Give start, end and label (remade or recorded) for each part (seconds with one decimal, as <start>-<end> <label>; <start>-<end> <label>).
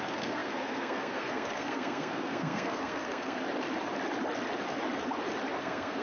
0.0-3.4 remade; 3.4-5.6 recorded; 5.6-6.0 remade